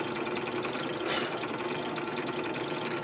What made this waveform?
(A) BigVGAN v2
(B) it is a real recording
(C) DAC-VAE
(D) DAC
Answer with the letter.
A